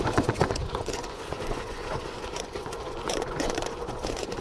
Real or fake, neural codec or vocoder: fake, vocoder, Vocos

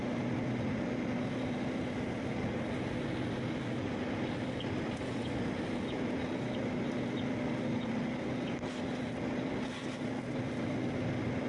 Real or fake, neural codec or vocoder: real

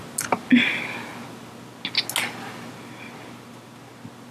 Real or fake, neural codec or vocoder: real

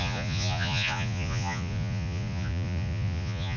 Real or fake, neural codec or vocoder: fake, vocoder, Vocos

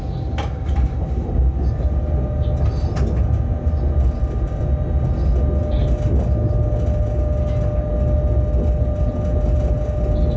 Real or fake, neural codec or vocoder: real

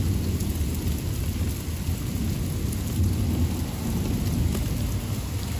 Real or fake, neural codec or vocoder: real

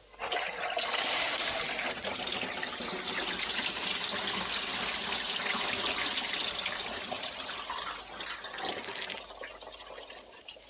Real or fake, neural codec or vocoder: real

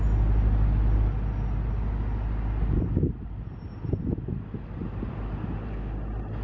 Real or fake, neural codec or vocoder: real